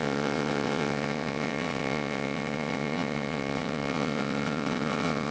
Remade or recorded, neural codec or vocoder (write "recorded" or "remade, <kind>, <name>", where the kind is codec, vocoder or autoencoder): remade, vocoder, WaveNeXt